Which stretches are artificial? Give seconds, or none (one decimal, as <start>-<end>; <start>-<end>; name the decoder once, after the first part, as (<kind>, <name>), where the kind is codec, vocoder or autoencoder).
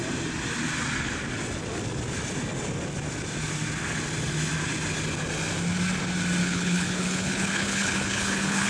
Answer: 6.4-8.7 (codec, HILCodec)